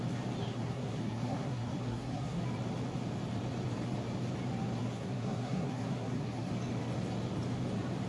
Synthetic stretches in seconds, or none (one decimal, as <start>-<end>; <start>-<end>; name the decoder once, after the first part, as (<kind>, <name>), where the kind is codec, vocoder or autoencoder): 0.4-2.4 (codec, SNAC); 4.8-6.5